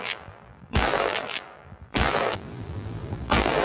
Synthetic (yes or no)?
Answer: yes